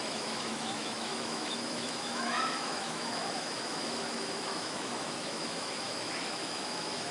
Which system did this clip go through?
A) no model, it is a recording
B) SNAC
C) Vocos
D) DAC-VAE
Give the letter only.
D